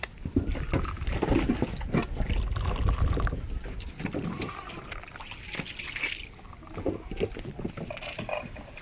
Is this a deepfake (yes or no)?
no